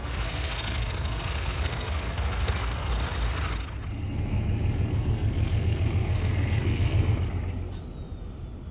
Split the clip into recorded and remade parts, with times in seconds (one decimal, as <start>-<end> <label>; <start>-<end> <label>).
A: 0.0-2.9 remade; 2.9-4.0 recorded; 4.0-7.2 remade; 7.2-8.7 recorded